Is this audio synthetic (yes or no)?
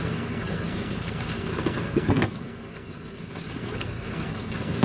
yes